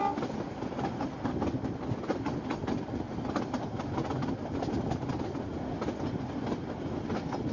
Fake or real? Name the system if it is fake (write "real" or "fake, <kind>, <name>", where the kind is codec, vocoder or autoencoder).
real